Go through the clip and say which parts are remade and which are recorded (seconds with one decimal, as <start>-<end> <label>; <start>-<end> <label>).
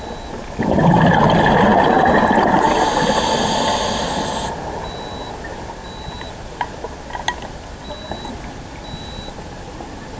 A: 0.0-10.2 recorded